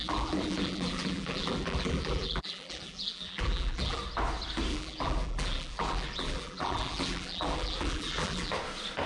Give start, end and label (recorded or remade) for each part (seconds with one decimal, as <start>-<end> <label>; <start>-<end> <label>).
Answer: 0.0-4.0 remade; 4.0-4.7 recorded; 4.7-8.5 remade; 8.5-9.1 recorded

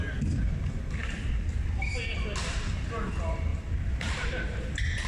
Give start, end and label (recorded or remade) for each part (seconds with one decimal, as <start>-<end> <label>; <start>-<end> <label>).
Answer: 0.0-3.5 recorded; 3.5-5.1 remade

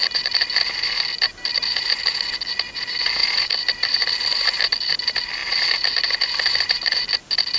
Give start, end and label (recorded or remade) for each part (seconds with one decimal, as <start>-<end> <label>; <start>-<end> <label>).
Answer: 0.0-3.2 recorded; 3.2-4.9 remade; 4.9-5.4 recorded; 5.4-7.0 remade; 7.0-7.6 recorded

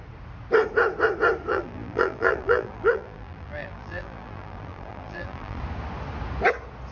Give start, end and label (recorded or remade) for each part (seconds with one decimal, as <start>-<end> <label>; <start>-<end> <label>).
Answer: 0.0-1.5 recorded; 1.5-5.6 remade; 5.6-6.9 recorded

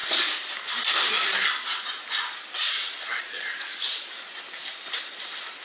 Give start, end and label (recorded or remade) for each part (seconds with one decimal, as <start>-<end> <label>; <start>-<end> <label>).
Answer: 0.0-5.6 recorded